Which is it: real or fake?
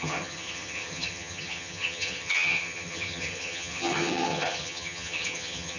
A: fake